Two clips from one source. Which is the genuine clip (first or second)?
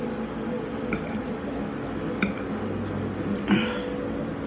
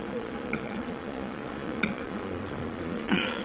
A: first